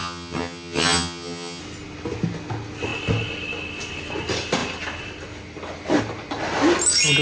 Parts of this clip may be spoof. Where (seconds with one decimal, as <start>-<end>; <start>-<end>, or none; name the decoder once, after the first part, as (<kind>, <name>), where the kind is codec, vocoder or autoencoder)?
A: 0.0-1.6 (vocoder, HiFi-GAN)